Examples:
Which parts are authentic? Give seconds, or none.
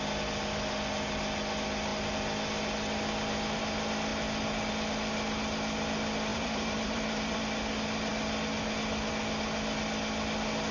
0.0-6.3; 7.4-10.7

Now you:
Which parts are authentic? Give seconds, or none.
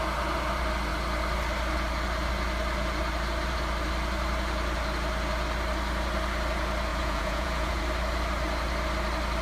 0.0-6.9; 7.8-9.4